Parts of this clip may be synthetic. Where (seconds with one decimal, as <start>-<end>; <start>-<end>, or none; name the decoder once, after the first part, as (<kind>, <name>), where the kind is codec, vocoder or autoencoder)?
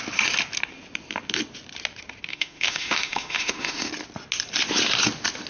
2.3-3.9 (autoencoder, DAC-VAE)